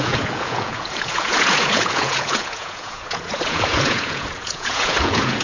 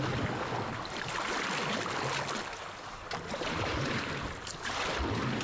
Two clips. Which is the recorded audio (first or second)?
second